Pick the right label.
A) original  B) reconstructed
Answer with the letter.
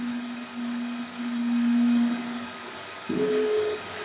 B